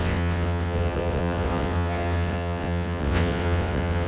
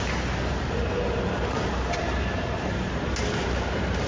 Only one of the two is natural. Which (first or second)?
second